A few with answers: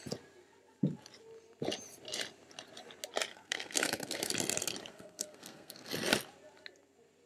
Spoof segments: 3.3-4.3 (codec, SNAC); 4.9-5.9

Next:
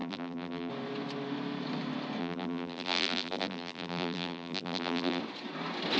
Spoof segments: 0.0-0.7 (vocoder, BigVGAN v2); 2.2-5.2

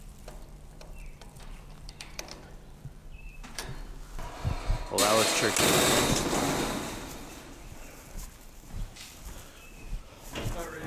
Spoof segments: 0.0-3.7 (vocoder, BigVGAN v2); 7.3-10.9

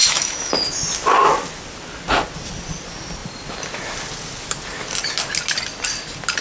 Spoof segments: 0.0-0.5 (autoencoder, DAC-VAE)